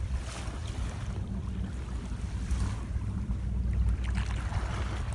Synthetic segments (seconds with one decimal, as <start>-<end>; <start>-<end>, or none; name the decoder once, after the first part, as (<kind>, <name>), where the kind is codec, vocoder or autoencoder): 0.6-3.7 (vocoder, BigVGAN v2)